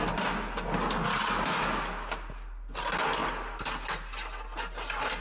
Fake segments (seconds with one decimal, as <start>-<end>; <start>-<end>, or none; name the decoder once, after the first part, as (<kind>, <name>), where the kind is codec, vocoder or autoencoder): none